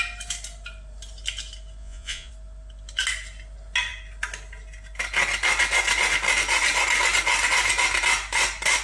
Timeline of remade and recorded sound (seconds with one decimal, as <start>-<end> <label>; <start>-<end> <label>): 0.0-1.8 recorded; 1.8-2.3 remade; 2.3-8.8 recorded